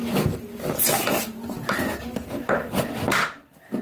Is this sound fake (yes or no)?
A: no